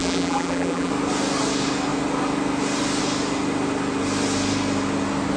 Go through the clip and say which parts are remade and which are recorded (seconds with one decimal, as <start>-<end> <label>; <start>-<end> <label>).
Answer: 0.0-0.9 remade; 0.9-5.4 recorded

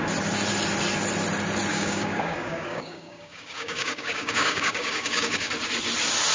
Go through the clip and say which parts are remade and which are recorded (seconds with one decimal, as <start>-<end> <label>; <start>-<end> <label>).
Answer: 0.0-1.7 recorded; 1.7-5.5 remade; 5.5-6.3 recorded

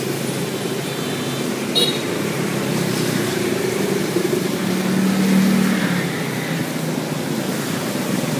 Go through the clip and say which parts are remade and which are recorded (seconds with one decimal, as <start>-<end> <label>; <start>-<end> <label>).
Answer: 0.0-4.6 remade; 4.6-5.8 recorded; 5.8-6.6 remade; 6.6-7.7 recorded; 7.7-8.4 remade

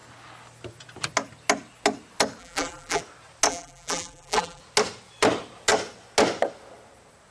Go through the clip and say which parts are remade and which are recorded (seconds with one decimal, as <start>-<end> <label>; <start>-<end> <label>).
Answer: 0.0-2.4 recorded; 2.4-3.0 remade; 3.0-3.5 recorded; 3.5-4.6 remade; 4.6-7.3 recorded